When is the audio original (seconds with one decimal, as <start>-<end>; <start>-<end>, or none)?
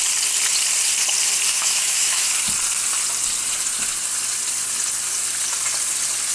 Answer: 0.0-1.5; 2.4-6.3